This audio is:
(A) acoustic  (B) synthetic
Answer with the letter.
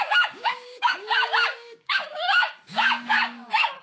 B